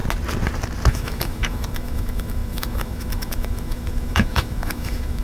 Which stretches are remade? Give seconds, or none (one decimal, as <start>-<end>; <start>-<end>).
0.9-5.2